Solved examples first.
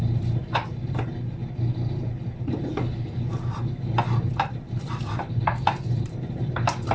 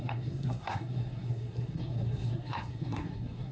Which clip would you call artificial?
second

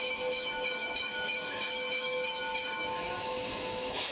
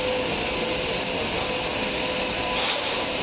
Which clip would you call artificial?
first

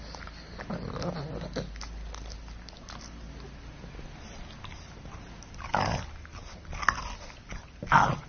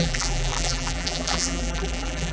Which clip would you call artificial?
second